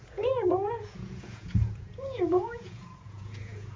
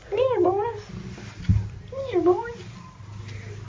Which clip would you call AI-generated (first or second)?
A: first